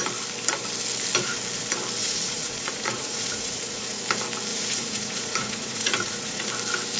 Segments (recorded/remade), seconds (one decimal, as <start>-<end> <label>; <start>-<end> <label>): 0.0-2.0 recorded; 2.0-4.0 remade; 4.0-4.5 recorded; 4.5-6.5 remade; 6.5-7.0 recorded